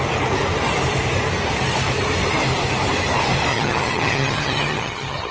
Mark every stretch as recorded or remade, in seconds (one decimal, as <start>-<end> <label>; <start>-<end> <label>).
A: 0.0-3.5 recorded; 3.5-5.3 remade